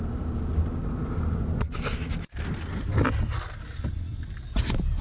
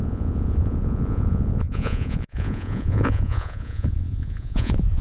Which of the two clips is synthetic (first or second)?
second